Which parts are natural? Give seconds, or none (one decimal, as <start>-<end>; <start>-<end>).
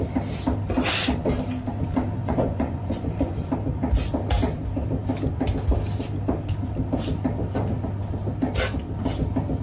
0.0-2.2; 3.5-9.6